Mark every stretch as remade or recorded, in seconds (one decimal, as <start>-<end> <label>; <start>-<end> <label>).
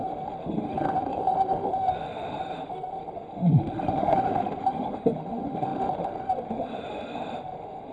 0.0-7.9 remade